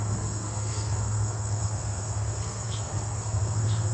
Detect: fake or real fake